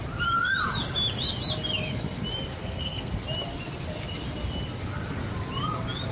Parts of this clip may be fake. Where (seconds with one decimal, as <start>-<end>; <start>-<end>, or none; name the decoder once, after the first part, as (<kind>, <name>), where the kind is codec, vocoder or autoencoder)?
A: 2.6-3.1 (codec, SNAC)